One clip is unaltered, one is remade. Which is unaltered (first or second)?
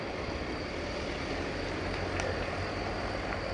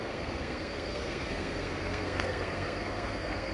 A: first